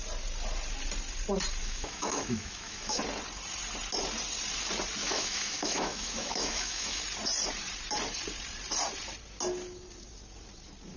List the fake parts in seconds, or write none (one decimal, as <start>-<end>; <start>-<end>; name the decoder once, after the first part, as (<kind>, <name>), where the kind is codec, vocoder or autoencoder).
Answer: 1.6-3.0 (autoencoder, DAC-VAE); 5.0-7.0